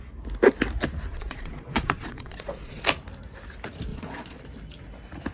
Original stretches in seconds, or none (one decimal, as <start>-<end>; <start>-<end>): 0.0-1.1; 2.8-3.9; 4.4-5.3